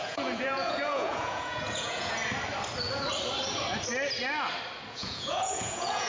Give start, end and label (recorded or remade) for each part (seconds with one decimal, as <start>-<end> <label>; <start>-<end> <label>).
0.0-2.2 remade; 2.2-4.9 recorded; 4.9-6.1 remade